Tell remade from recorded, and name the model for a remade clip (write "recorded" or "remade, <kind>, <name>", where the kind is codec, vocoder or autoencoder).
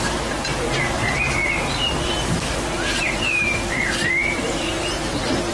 remade, vocoder, BigVGAN v2